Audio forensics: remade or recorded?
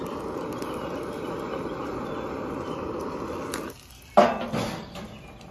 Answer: recorded